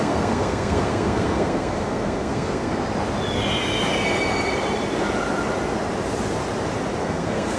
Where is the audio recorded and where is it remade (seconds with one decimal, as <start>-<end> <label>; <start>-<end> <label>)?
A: 0.0-2.8 remade; 2.8-7.0 recorded; 7.0-7.6 remade